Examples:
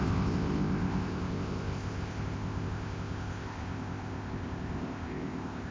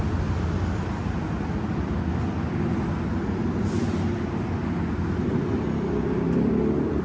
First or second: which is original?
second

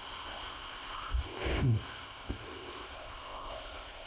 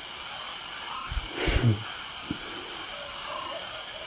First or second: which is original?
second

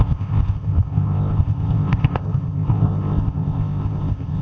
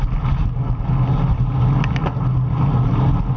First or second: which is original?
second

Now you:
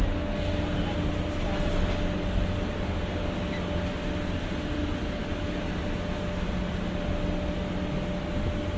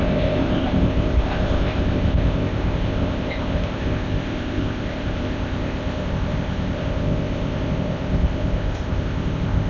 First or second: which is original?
first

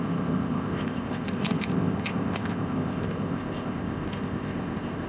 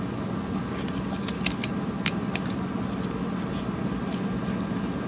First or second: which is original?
second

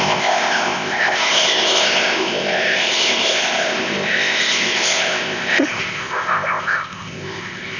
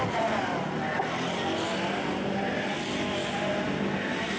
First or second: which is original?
second